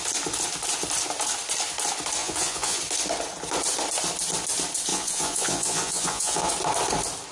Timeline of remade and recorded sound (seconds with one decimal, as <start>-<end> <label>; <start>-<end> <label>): 0.0-2.2 recorded; 2.2-2.8 remade; 2.8-4.9 recorded; 4.9-6.5 remade; 6.5-7.3 recorded